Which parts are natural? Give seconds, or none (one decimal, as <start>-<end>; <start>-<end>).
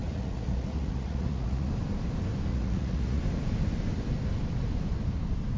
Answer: 1.7-2.5; 3.2-5.6